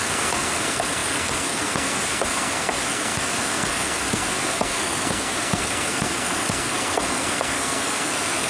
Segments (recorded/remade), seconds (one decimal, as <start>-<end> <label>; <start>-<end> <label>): 0.0-8.5 remade